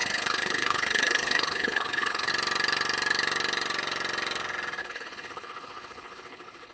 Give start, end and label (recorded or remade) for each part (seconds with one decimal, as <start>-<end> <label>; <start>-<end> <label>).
0.0-2.3 remade; 2.3-4.8 recorded; 4.8-6.7 remade